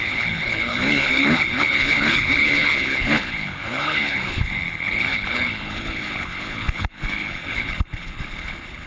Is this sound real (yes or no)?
no